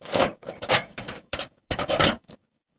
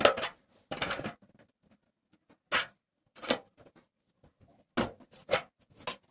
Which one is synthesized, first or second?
first